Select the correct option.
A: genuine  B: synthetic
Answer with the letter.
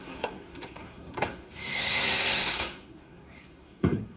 B